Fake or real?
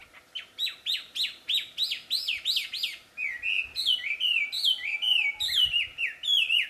real